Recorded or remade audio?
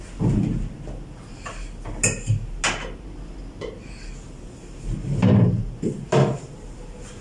recorded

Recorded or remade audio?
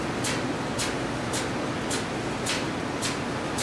recorded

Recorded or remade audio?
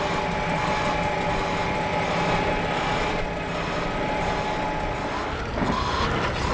recorded